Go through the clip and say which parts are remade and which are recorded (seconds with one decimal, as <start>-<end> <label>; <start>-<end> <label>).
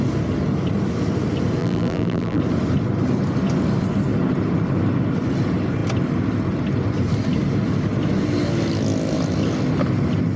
0.0-1.6 recorded; 1.6-2.4 remade; 2.4-10.4 recorded